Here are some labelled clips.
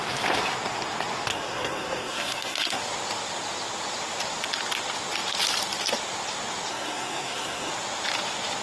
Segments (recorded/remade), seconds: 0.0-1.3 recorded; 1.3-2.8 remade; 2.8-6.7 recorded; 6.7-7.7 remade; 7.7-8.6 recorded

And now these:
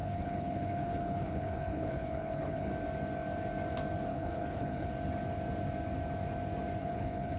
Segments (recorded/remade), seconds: 0.0-2.7 remade; 2.7-4.1 recorded; 4.1-4.9 remade; 4.9-6.8 recorded; 6.8-7.4 remade

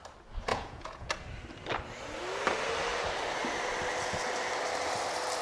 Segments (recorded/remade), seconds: 0.0-0.5 recorded; 0.5-1.1 remade; 1.1-5.4 recorded

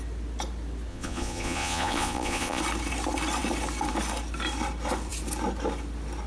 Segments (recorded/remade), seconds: 0.0-0.9 recorded; 0.9-2.6 remade; 2.6-6.3 recorded

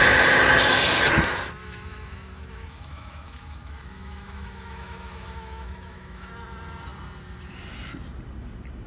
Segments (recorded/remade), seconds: 0.0-1.6 recorded; 1.6-6.3 remade; 6.3-8.9 recorded

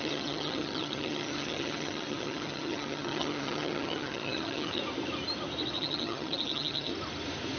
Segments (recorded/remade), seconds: 0.0-4.8 remade; 4.8-5.8 recorded; 5.8-6.9 remade; 6.9-7.6 recorded